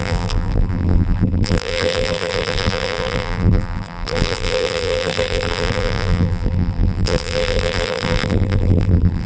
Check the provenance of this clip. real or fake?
fake